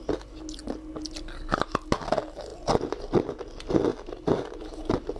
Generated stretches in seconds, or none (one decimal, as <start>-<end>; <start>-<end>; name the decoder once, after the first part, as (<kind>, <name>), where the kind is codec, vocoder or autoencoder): none